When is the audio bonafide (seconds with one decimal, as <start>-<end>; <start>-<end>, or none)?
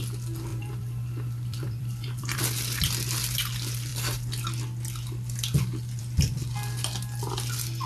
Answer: 0.0-0.5; 2.4-7.9